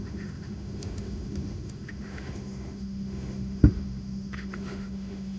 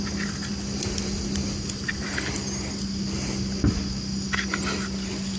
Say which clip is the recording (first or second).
second